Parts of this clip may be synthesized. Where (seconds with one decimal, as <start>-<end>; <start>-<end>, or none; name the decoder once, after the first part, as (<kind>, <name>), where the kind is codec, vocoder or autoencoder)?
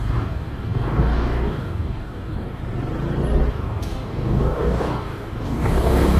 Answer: 0.0-2.6 (codec, DAC); 3.5-6.2